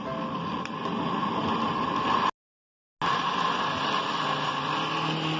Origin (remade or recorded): recorded